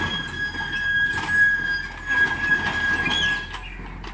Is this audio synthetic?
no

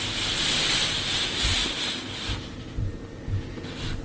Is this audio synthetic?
no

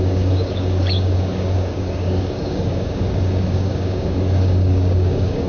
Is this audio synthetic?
yes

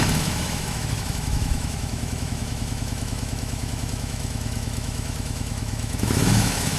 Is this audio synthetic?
yes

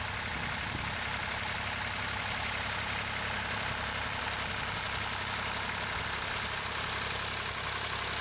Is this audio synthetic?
no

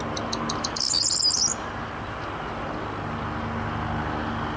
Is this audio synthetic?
no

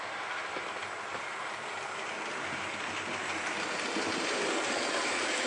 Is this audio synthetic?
no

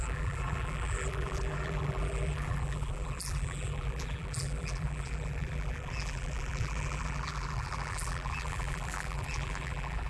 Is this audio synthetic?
yes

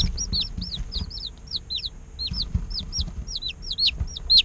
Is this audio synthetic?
no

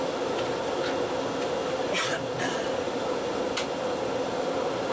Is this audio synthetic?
no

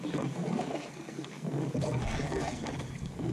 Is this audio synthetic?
yes